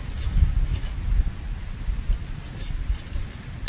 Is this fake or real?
real